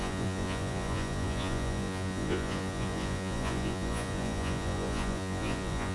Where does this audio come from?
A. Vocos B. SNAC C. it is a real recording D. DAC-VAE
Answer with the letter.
A